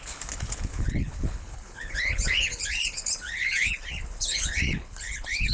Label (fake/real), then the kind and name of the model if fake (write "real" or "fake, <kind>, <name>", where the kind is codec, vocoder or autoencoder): fake, codec, HILCodec